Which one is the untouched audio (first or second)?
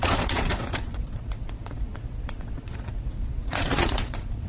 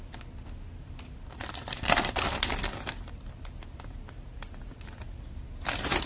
second